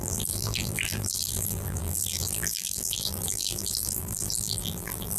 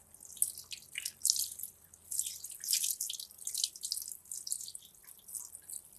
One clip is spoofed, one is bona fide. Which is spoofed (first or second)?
first